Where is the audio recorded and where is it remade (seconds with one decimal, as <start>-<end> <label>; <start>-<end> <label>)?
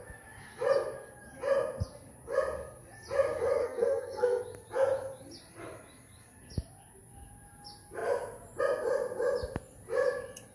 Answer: 0.0-3.6 recorded; 3.6-4.4 remade; 4.4-10.5 recorded